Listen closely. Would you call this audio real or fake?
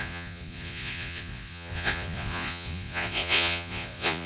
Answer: fake